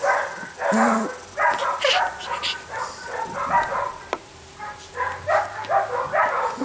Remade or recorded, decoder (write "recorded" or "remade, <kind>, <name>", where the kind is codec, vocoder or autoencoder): recorded